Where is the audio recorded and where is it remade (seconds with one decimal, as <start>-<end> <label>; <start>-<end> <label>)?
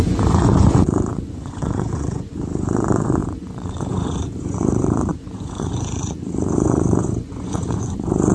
0.0-8.3 remade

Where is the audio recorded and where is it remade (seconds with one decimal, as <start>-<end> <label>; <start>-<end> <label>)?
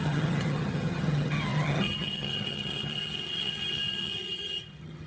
0.0-5.1 remade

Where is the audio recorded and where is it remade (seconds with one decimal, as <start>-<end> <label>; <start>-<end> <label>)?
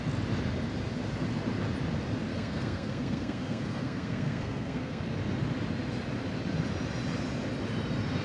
0.0-2.3 recorded; 2.3-5.0 remade; 5.0-8.2 recorded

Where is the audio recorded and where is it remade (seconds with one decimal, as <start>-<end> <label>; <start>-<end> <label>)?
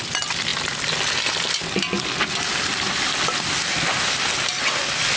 0.0-5.2 recorded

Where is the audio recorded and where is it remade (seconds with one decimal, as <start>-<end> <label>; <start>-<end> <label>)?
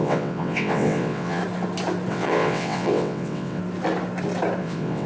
0.0-1.4 remade; 1.4-2.1 recorded; 2.1-3.6 remade; 3.6-4.6 recorded; 4.6-5.1 remade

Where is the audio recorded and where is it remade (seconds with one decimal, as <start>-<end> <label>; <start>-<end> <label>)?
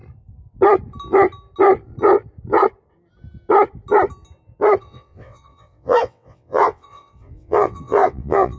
0.0-4.8 recorded; 4.8-8.6 remade